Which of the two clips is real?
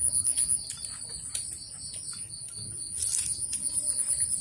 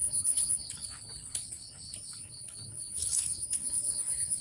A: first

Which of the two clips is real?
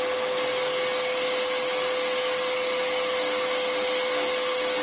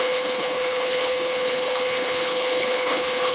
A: first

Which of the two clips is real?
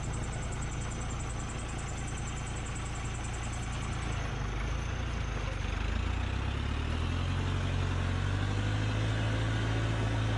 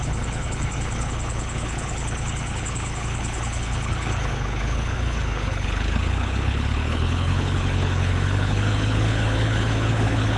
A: first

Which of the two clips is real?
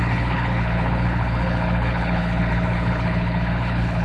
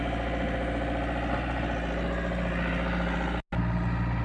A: second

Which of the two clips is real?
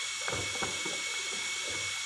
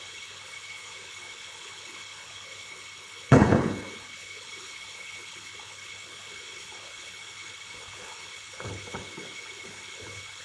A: first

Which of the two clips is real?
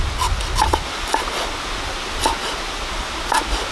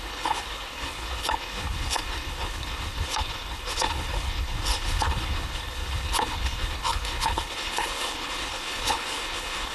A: first